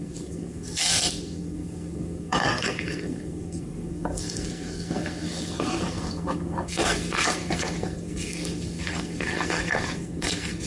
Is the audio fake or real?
fake